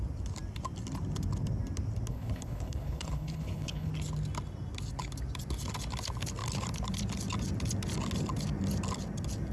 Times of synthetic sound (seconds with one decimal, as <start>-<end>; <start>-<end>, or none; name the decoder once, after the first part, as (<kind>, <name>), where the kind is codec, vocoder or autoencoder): 2.1-3.9 (codec, HILCodec)